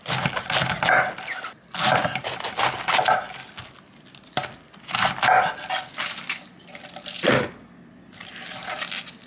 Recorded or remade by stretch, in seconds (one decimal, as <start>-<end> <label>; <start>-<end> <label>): 0.0-9.3 recorded